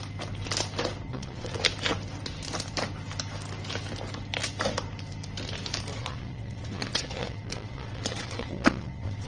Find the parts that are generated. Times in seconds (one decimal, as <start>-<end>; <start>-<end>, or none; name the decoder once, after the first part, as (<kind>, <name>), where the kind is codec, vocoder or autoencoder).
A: 1.1-1.6 (vocoder, WaveNeXt); 5.9-9.3